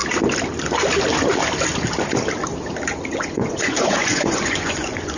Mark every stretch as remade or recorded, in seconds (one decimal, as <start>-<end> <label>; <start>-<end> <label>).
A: 0.0-3.1 recorded; 3.1-5.2 remade

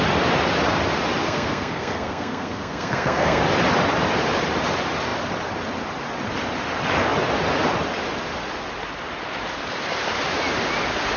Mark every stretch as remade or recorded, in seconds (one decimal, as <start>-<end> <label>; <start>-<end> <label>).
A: 0.0-1.2 recorded; 1.2-3.4 remade; 3.4-11.2 recorded

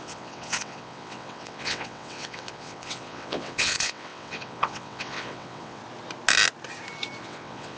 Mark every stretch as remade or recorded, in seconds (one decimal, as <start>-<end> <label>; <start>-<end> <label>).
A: 0.0-5.8 remade; 5.8-7.2 recorded; 7.2-7.8 remade

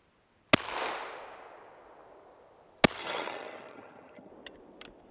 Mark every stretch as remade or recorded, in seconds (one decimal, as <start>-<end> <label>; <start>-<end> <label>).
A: 0.0-3.0 recorded; 3.0-4.3 remade; 4.3-5.1 recorded

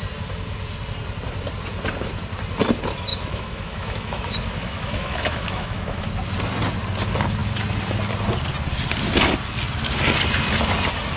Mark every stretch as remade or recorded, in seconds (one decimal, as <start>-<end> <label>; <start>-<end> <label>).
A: 0.0-3.1 recorded; 3.1-6.1 remade; 6.1-11.2 recorded

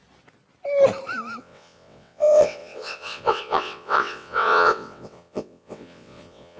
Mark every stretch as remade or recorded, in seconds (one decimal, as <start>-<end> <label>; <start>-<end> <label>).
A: 0.0-1.4 recorded; 1.4-6.6 remade